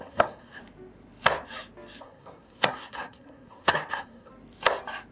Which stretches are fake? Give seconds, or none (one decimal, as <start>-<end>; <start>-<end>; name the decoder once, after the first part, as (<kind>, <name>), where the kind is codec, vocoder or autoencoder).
0.0-0.6 (codec, SNAC); 2.0-4.3